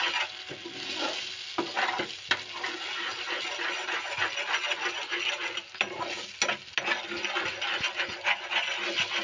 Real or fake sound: real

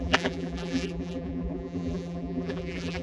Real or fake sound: fake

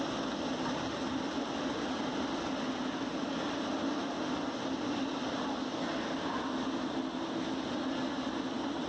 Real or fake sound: real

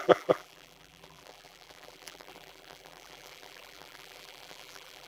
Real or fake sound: fake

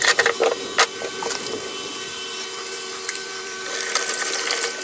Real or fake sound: fake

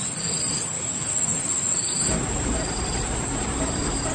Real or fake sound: real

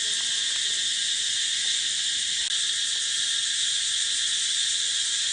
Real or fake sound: real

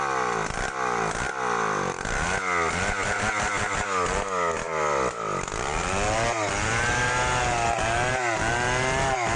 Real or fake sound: real